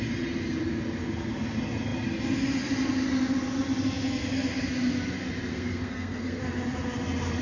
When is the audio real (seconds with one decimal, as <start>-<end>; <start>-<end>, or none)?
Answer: 0.0-5.5; 6.4-7.4